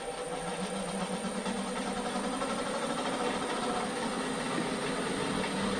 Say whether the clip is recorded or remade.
recorded